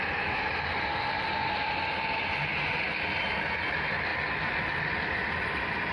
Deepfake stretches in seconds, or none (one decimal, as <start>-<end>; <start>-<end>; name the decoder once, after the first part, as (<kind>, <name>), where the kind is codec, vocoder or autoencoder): none